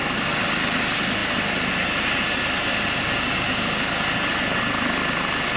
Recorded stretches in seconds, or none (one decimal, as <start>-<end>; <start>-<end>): 0.0-5.6